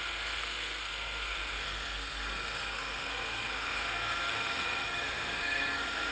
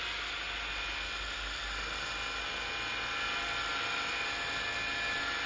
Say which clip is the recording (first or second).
second